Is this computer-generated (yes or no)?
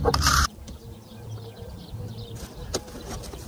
yes